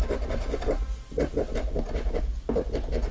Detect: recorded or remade recorded